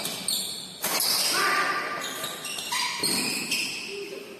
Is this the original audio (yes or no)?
yes